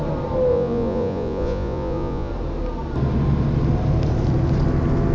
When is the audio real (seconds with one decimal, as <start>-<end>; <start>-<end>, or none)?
0.0-0.5; 2.3-5.1